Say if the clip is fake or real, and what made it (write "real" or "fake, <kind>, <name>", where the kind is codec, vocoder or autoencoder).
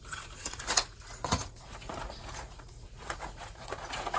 fake, vocoder, Vocos